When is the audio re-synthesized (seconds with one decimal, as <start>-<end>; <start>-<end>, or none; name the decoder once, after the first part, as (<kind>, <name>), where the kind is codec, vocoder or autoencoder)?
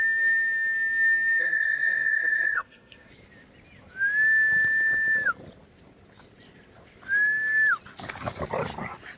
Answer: 1.4-3.1 (codec, SNAC)